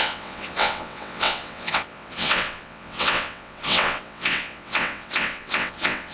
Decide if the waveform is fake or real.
fake